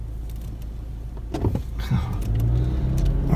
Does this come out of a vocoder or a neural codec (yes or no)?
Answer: no